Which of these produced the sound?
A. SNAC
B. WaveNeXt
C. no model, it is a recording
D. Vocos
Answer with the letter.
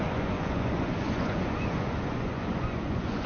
D